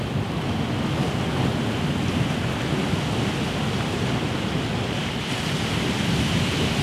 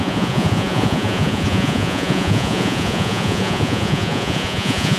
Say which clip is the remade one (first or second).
second